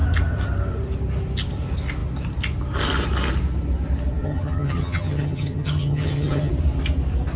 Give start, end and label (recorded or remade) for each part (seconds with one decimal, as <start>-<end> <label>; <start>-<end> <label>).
0.0-4.2 recorded; 4.2-6.5 remade; 6.5-7.4 recorded